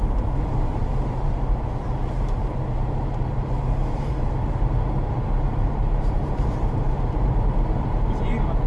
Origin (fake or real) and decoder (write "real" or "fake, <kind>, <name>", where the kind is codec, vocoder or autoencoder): fake, vocoder, BigVGAN v2